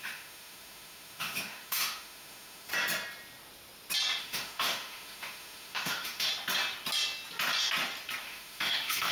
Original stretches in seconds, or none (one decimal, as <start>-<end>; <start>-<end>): 2.7-4.2; 6.3-8.2